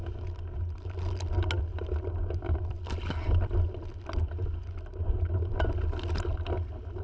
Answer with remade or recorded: recorded